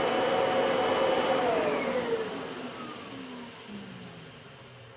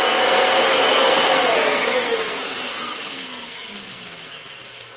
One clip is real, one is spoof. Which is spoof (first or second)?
second